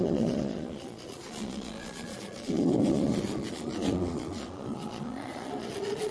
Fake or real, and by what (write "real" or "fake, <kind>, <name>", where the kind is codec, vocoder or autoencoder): fake, vocoder, Vocos